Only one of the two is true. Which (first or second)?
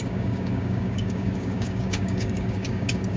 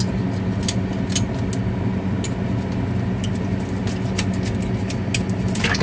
second